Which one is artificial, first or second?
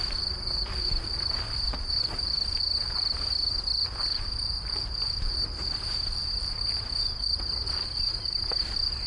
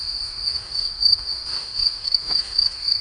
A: second